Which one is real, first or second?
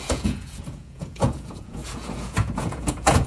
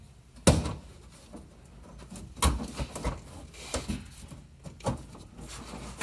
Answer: second